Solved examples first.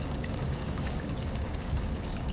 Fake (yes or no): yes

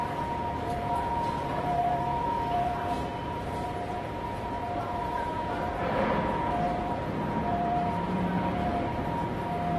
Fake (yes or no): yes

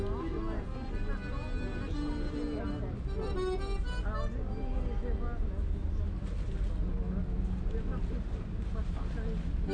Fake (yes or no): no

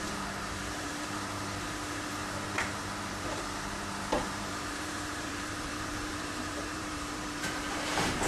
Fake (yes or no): yes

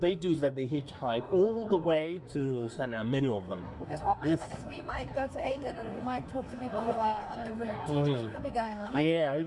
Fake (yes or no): yes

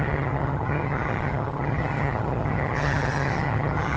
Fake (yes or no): yes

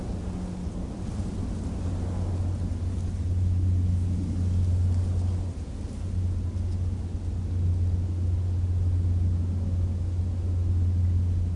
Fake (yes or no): no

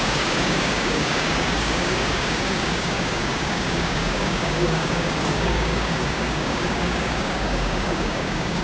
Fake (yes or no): yes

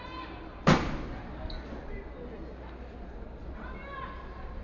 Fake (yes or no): no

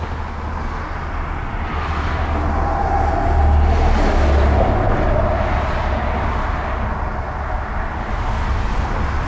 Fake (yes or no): no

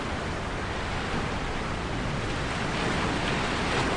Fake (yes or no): no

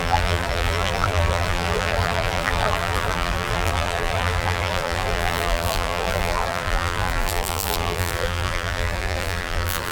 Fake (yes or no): yes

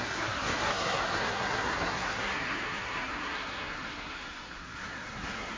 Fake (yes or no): yes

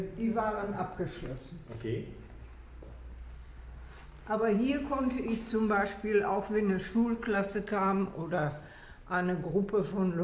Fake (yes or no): no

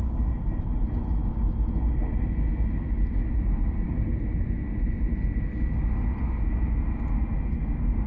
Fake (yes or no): no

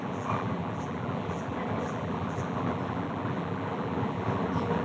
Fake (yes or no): yes